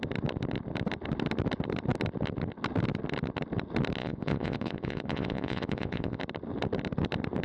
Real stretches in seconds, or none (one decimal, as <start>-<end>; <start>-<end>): 0.0-4.0; 6.2-7.4